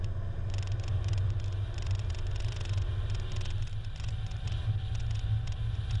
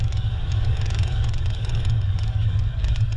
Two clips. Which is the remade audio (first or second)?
second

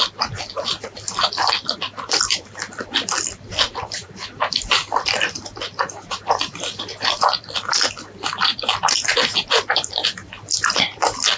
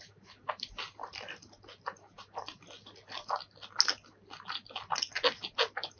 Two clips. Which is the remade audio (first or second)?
first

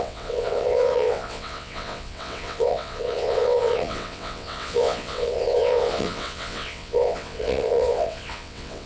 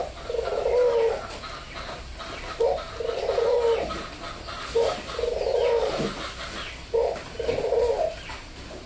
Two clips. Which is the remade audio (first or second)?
first